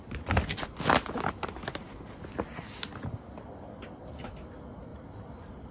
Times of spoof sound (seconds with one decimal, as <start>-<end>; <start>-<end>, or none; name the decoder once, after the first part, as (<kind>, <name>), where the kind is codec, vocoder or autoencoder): none